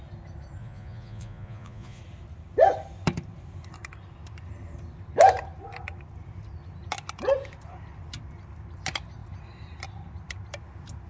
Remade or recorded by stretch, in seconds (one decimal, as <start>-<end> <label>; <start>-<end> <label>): 0.0-0.6 recorded; 0.6-2.0 remade; 2.0-11.1 recorded